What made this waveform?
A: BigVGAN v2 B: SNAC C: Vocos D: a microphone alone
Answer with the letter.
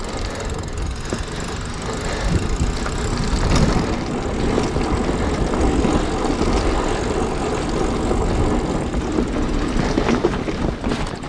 D